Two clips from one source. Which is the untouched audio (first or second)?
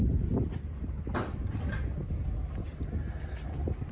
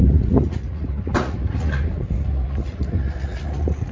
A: first